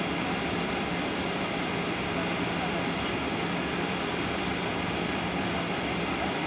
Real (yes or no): yes